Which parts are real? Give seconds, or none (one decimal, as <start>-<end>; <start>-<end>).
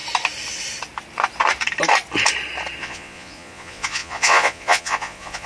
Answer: 0.0-2.8